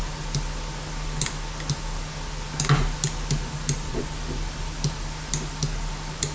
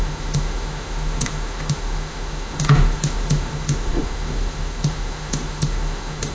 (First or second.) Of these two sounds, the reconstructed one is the second